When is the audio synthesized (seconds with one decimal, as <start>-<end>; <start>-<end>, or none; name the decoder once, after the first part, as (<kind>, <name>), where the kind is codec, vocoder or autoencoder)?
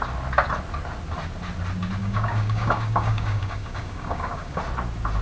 2.0-4.6 (codec, DAC)